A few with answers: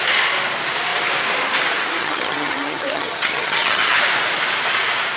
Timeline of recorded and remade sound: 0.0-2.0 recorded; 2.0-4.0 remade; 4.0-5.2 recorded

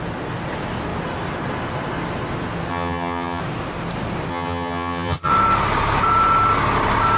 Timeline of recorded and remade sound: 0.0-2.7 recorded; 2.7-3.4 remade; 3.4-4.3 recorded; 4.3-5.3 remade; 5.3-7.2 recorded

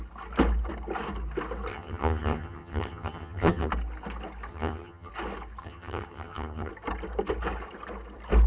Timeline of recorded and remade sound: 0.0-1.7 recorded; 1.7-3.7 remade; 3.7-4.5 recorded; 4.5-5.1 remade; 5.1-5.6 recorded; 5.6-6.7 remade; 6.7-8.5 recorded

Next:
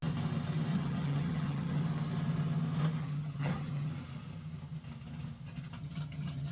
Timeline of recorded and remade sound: 0.0-0.7 recorded; 0.7-1.8 remade; 1.8-3.0 recorded; 3.0-3.9 remade; 3.9-5.8 recorded; 5.8-6.5 remade